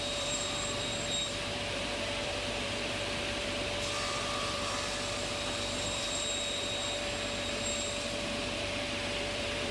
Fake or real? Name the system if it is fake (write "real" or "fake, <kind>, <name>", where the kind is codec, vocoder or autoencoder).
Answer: fake, vocoder, BigVGAN v2